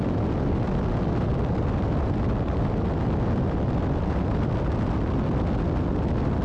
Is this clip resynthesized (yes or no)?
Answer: no